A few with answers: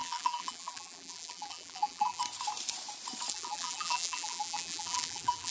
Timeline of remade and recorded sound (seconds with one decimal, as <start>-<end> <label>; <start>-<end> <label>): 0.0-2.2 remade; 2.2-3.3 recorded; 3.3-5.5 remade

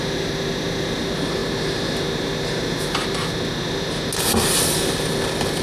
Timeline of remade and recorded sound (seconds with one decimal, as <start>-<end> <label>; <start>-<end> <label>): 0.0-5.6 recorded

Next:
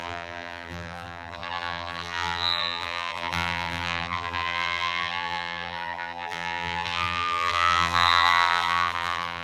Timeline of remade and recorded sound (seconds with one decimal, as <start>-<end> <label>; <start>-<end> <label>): 0.0-9.4 remade

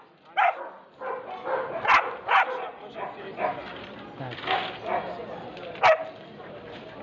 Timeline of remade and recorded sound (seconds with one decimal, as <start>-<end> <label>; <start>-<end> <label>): 0.0-7.0 recorded